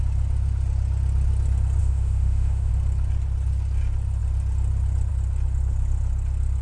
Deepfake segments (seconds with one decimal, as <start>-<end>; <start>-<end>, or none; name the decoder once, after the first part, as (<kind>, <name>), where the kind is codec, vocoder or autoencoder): 1.8-2.7 (autoencoder, DAC-VAE)